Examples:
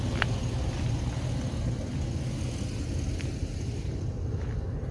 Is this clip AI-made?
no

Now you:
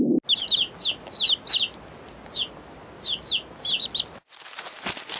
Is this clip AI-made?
no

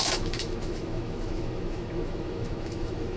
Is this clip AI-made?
yes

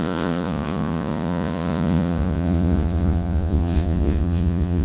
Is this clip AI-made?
yes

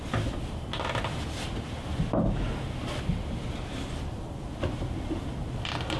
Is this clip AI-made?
no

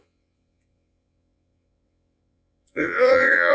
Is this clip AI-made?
yes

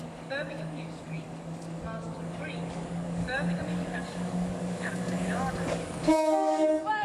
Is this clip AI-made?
yes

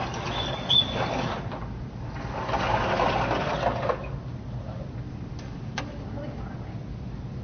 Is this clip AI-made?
no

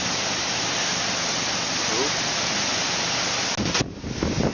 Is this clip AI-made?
no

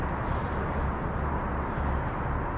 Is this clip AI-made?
no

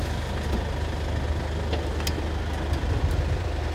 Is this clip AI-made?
no